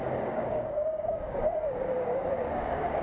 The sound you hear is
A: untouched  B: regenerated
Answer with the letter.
B